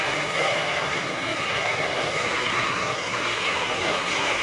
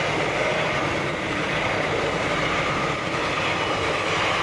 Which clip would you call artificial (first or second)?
first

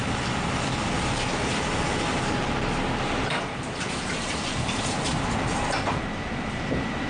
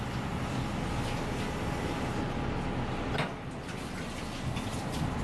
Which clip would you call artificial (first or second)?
first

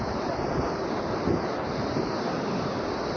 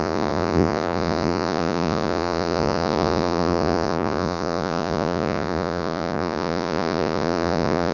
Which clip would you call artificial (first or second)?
second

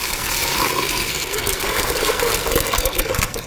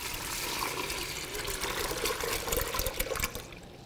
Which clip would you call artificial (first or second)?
first